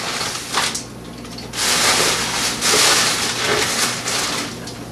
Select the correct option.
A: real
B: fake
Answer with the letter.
A